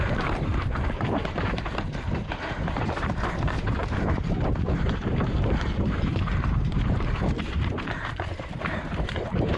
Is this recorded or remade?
remade